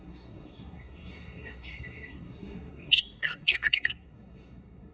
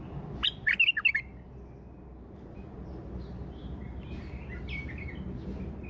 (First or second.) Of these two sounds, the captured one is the second